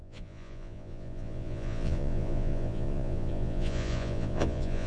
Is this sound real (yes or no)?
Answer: no